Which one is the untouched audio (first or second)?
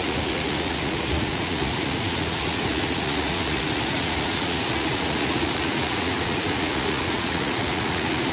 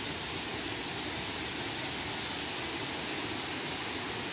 second